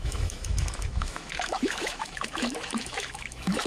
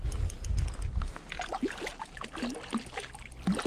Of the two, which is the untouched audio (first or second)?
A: second